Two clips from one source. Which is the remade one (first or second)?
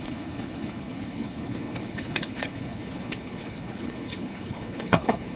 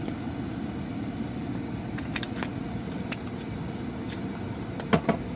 first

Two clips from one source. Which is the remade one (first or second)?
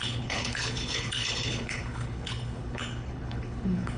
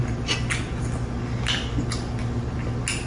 first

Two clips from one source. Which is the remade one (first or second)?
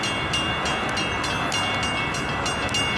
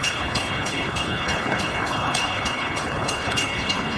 second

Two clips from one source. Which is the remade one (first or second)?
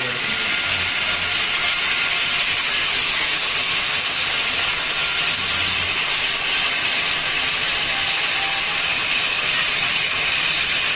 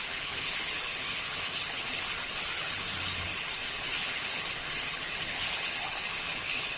second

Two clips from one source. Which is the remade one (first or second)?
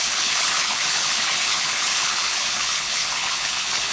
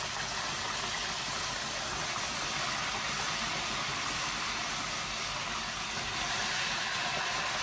first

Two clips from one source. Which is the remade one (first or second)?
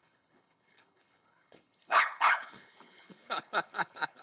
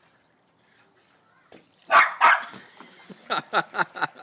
first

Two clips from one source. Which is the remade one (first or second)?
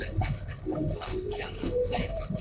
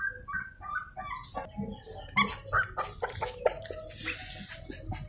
first